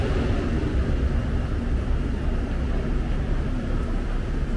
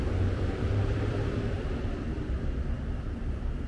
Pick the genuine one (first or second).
first